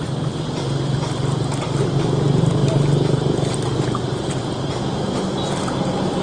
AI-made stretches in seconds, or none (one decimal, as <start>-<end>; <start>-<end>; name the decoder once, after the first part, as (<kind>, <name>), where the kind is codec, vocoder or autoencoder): none